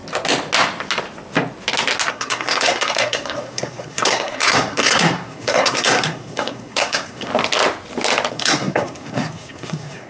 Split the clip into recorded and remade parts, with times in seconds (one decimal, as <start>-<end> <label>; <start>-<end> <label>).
0.0-2.1 recorded; 2.1-7.3 remade; 7.3-8.3 recorded; 8.3-10.1 remade